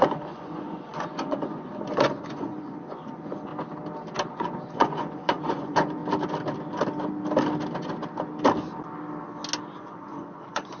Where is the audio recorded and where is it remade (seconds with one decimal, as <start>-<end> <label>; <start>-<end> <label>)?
0.0-3.5 remade; 3.5-4.3 recorded; 4.3-6.0 remade; 6.0-9.8 recorded; 9.8-10.8 remade